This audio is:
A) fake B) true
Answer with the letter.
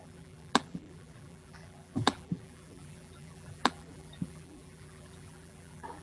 A